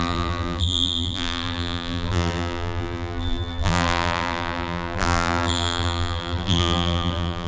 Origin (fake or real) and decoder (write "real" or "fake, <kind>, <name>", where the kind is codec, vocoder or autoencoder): fake, vocoder, BigVGAN v2